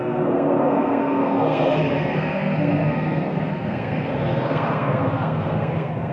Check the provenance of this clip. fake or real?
fake